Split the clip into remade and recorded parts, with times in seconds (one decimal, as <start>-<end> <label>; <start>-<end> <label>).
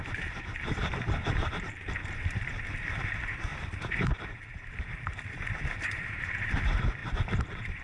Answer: 0.0-7.8 remade